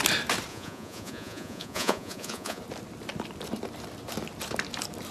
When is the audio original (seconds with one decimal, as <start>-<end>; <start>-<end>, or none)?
0.0-0.5; 2.6-5.1